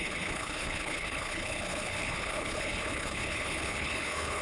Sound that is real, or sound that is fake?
fake